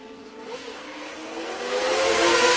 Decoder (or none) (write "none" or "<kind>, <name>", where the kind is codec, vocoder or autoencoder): codec, SNAC